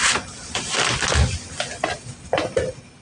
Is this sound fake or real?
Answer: real